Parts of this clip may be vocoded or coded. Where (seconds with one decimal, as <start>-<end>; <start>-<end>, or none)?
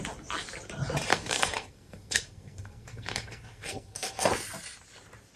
1.1-4.3